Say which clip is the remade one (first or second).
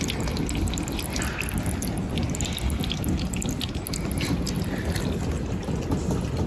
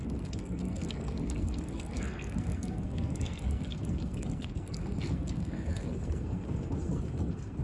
second